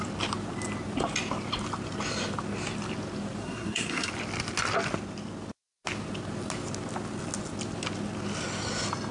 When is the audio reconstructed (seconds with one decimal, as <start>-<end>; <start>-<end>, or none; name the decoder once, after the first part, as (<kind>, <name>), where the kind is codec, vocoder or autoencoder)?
3.4-4.1 (codec, SNAC)